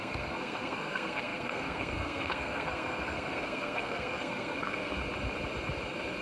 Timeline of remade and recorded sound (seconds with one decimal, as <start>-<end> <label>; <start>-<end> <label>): 0.0-5.0 remade; 5.0-6.2 recorded